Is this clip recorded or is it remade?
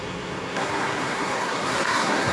remade